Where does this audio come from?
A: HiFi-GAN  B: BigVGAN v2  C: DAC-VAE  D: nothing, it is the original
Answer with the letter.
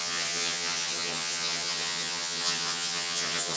A